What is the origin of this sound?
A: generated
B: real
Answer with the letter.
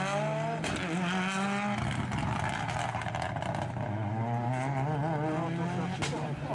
B